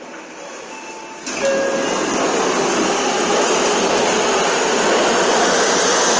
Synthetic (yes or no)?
no